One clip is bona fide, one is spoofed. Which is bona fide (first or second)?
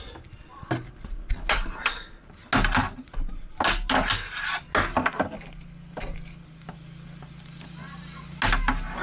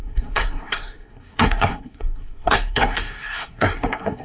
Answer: first